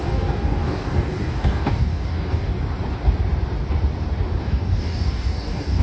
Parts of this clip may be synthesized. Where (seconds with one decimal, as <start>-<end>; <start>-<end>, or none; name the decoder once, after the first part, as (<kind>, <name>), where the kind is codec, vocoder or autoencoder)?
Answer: 0.0-2.5 (codec, DAC); 4.4-5.8